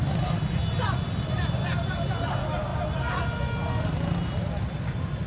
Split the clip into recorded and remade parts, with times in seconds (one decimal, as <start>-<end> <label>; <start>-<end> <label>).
0.0-5.3 recorded